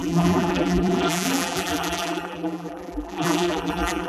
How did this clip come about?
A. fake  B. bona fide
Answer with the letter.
A